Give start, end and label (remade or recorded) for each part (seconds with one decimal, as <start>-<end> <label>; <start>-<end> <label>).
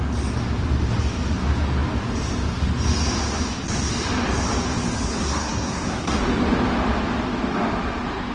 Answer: 0.0-5.2 recorded; 5.2-6.2 remade; 6.2-8.3 recorded